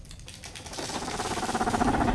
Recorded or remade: remade